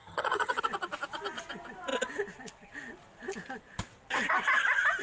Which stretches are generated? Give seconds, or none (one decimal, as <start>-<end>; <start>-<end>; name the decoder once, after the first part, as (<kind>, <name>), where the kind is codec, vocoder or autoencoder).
0.0-0.6 (vocoder, HiFi-GAN)